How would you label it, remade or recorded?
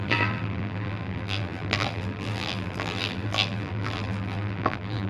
remade